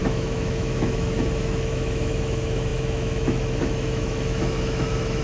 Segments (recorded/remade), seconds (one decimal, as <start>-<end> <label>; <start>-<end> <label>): 0.0-5.2 remade